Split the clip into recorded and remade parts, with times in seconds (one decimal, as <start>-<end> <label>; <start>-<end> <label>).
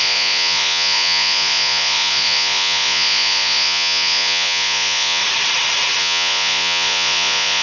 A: 0.0-5.2 remade; 5.2-6.0 recorded; 6.0-7.6 remade